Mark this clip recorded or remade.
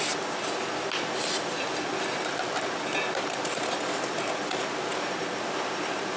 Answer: recorded